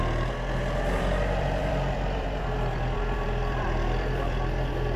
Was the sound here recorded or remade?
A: remade